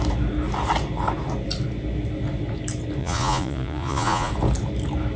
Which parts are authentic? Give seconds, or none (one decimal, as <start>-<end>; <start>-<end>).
0.0-3.0; 4.3-5.2